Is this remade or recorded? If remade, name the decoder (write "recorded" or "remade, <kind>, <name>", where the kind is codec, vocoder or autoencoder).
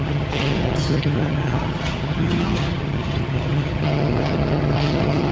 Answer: remade, vocoder, HiFi-GAN